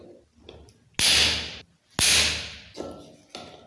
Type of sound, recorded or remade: recorded